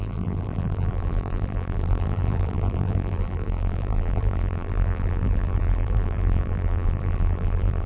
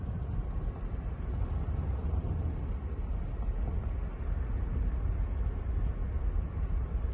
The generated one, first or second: first